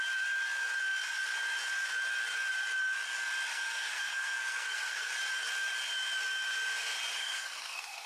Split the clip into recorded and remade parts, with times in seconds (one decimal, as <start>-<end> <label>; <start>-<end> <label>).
0.0-3.5 recorded; 3.5-5.1 remade; 5.1-7.1 recorded; 7.1-8.1 remade